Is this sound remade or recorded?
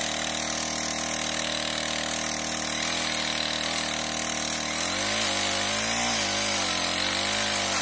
recorded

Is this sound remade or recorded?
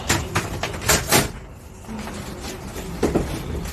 recorded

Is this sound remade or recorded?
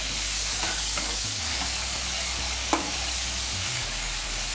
remade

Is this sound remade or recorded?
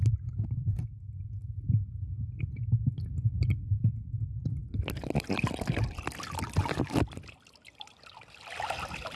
recorded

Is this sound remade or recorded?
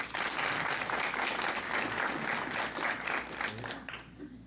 recorded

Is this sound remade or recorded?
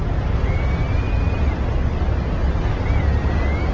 recorded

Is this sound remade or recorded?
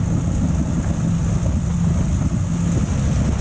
recorded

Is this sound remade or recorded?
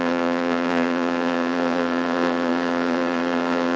remade